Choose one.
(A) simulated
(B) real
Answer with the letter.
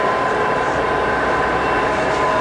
A